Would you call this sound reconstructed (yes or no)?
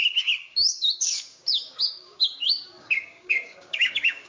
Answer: yes